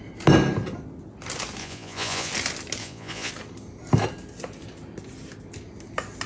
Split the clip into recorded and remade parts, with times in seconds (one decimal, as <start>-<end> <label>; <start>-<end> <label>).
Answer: 0.0-1.6 recorded; 1.6-2.3 remade; 2.3-2.8 recorded; 2.8-3.3 remade; 3.3-6.3 recorded